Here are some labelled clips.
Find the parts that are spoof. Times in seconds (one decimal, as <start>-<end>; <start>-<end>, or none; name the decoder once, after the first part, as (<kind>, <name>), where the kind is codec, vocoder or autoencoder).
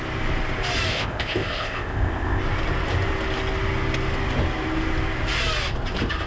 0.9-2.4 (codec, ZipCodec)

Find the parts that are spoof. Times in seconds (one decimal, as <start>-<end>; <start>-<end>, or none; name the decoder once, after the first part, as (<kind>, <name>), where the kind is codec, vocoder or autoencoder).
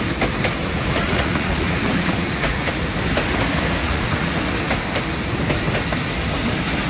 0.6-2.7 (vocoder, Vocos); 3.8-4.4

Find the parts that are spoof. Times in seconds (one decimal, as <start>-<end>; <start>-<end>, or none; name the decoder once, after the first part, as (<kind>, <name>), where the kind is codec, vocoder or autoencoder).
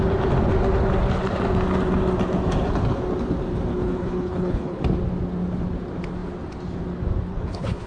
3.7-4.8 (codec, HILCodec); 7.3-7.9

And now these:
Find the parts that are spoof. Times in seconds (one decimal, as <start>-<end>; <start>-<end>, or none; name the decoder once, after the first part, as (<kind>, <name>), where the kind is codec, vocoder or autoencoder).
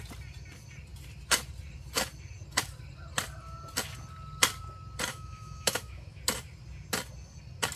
5.1-6.2 (autoencoder, DAC-VAE)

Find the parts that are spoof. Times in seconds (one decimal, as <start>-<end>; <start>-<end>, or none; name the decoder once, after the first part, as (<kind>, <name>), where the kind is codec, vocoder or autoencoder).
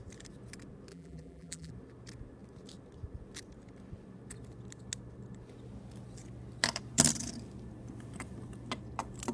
0.9-1.7 (vocoder, BigVGAN v2)